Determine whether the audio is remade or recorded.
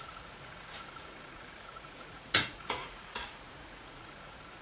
remade